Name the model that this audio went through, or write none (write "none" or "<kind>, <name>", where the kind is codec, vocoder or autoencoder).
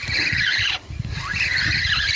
none